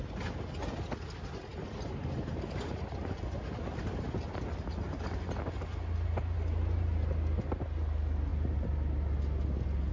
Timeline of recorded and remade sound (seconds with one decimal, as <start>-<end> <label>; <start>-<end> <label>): 0.0-9.9 recorded